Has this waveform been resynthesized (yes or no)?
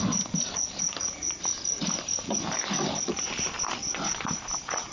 no